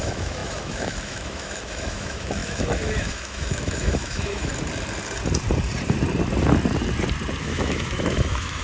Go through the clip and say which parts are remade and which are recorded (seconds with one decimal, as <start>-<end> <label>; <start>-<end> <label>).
0.0-4.5 remade; 4.5-7.4 recorded; 7.4-8.6 remade